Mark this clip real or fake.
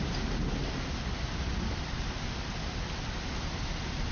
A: real